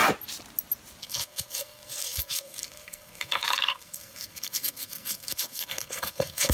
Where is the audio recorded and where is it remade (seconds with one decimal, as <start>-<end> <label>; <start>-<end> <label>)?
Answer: 0.0-1.0 recorded; 1.0-6.5 remade